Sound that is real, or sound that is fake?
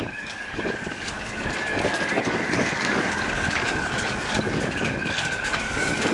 fake